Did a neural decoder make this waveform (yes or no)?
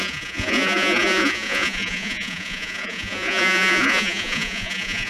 yes